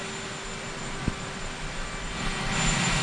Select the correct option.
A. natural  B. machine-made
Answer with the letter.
A